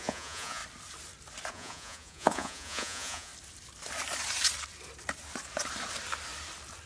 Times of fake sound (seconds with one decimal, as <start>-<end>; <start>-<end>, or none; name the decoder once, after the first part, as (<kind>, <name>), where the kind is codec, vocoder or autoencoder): 0.0-0.6 (vocoder, Vocos); 1.5-3.3